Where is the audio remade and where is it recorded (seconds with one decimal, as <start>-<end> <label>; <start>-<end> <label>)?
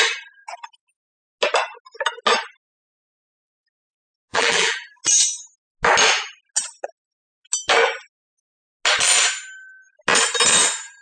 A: 0.0-4.3 recorded; 4.3-5.0 remade; 5.0-11.0 recorded